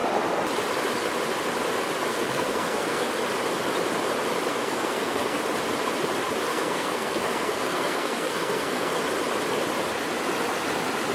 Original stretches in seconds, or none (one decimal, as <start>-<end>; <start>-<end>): 0.0-2.1; 3.1-4.5; 5.4-6.5; 9.0-11.1